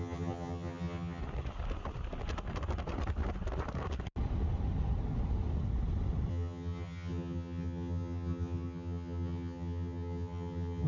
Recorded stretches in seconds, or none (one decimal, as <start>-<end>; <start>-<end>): 1.2-6.3